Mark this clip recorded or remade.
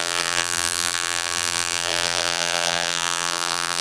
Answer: remade